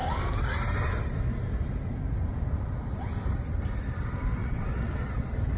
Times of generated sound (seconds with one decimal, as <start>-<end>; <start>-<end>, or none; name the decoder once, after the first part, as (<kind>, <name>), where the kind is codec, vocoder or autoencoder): 4.4-5.1 (vocoder, WaveNeXt)

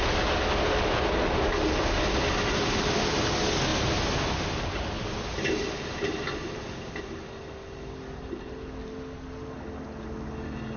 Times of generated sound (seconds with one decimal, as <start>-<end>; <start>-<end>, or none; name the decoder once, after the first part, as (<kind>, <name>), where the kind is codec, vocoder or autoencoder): none

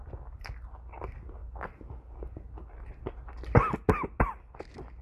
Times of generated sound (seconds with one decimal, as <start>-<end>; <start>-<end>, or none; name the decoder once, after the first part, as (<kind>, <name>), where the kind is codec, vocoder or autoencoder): none

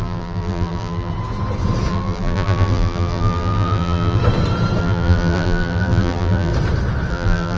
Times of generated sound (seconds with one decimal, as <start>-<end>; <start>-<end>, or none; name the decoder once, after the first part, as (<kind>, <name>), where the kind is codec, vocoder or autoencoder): 0.0-1.1 (vocoder, BigVGAN v2); 1.9-4.2; 4.8-6.5; 7.1-7.6

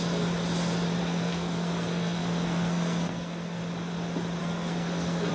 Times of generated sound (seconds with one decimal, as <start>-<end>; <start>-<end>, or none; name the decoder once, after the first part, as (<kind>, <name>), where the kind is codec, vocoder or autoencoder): 1.0-3.6 (codec, SNAC); 4.4-5.3